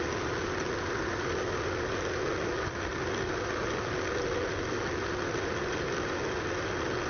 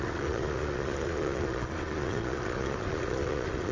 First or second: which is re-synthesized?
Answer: second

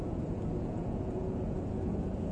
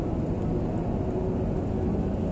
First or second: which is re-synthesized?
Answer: first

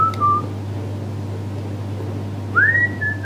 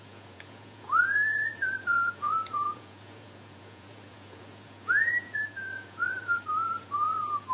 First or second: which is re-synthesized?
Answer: second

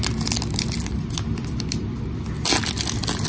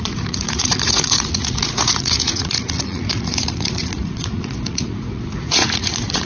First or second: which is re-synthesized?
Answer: second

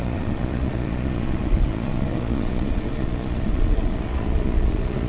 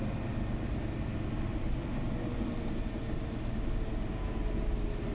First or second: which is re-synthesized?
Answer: first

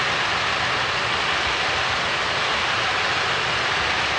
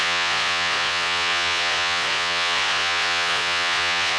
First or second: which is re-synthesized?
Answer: second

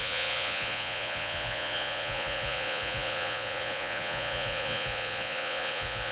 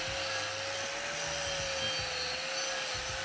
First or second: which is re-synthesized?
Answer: first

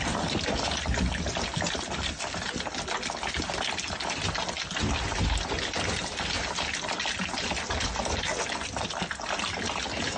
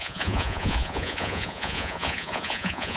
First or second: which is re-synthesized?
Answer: second